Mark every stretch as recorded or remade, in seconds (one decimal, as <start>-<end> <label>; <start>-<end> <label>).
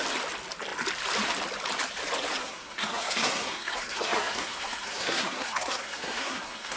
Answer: 0.0-2.4 recorded; 2.4-6.8 remade